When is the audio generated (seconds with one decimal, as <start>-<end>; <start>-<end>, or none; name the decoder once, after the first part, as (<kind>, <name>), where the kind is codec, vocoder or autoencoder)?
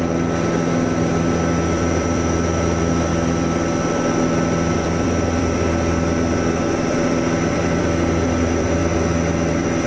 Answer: 0.0-8.8 (vocoder, BigVGAN v2); 9.5-9.9